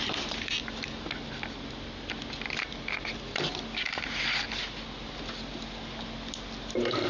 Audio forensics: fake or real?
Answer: real